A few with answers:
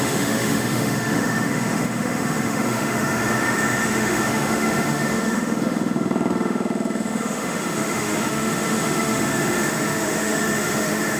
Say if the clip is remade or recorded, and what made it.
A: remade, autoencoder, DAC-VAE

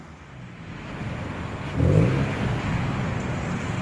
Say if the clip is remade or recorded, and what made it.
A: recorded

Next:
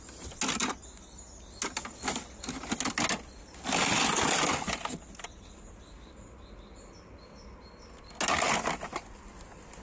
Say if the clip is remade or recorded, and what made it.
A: recorded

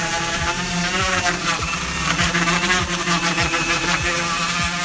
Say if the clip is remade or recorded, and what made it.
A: remade, vocoder, BigVGAN v2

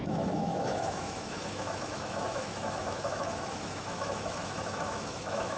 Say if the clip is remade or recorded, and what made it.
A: remade, autoencoder, DAC-VAE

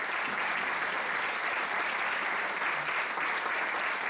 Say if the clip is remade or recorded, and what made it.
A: recorded